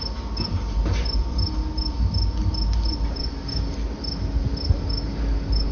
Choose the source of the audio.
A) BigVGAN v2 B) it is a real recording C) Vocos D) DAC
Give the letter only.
B